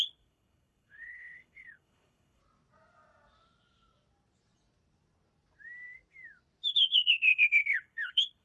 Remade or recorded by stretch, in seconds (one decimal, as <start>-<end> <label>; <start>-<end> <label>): 0.0-2.4 remade; 2.4-6.7 recorded; 6.7-8.4 remade